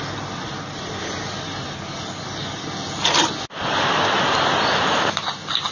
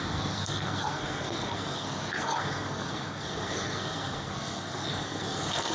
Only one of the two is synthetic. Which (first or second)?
second